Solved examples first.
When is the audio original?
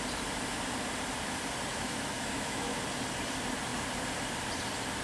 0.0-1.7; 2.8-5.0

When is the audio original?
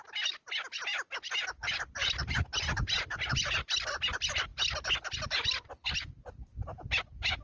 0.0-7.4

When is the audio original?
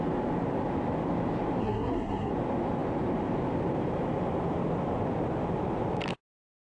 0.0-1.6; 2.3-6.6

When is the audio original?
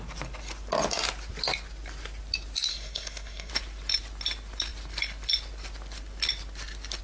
0.0-2.7; 3.5-7.0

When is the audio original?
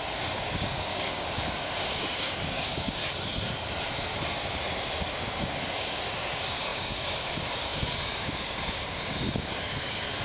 3.0-5.4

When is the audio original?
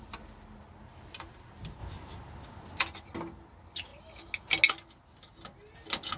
0.0-6.2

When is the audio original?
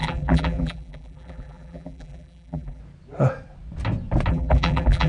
2.8-4.3